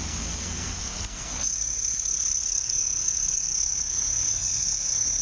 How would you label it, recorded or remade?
remade